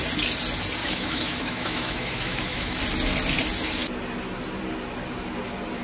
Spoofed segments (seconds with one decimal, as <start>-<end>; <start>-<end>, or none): 0.8-2.8